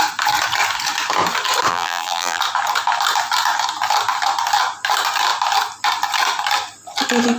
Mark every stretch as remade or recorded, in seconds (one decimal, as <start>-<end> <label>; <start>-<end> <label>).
0.0-1.7 recorded; 1.7-2.4 remade; 2.4-7.4 recorded